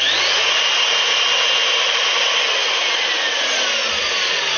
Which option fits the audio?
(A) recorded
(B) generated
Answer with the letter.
A